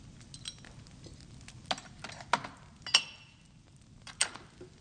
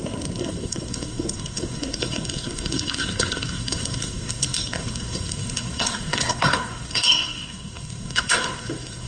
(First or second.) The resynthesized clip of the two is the second